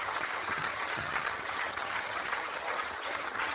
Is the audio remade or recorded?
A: remade